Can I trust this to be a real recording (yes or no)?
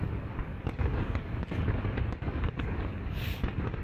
no